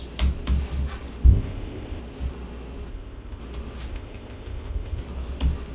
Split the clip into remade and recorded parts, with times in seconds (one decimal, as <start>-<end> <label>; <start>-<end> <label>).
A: 0.0-1.3 recorded; 1.3-2.0 remade; 2.0-2.9 recorded; 2.9-3.4 remade; 3.4-3.9 recorded; 3.9-5.0 remade; 5.0-5.7 recorded